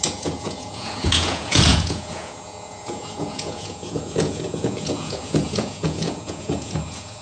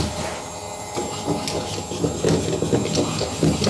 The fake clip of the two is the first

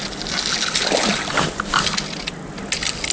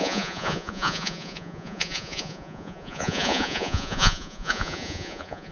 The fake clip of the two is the second